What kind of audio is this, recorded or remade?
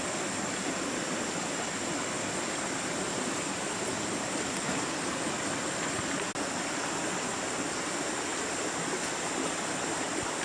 recorded